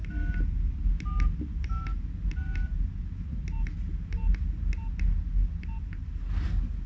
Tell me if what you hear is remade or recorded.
recorded